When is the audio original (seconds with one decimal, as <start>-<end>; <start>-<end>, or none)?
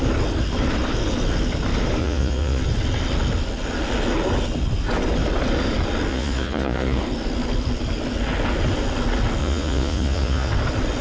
0.0-2.0; 2.6-6.1; 7.0-9.4; 10.5-11.0